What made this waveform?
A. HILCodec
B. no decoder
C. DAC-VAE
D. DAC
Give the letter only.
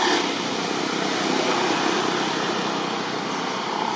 B